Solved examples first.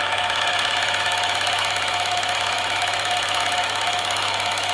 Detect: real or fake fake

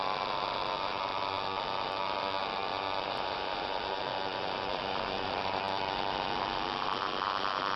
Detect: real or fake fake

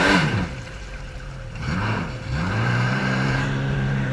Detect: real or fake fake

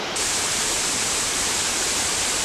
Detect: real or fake fake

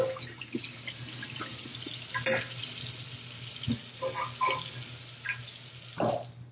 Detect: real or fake real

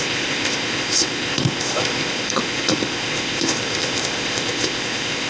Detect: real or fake fake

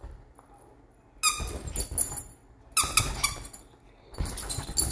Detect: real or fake real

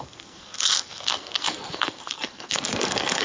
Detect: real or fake fake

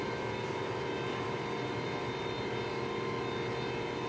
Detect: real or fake fake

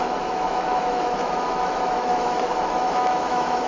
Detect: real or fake fake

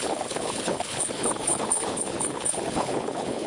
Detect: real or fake fake